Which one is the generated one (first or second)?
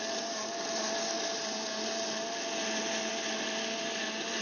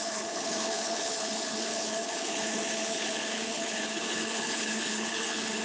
second